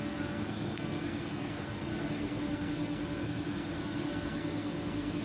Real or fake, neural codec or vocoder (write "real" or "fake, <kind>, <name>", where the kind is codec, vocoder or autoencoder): fake, codec, SNAC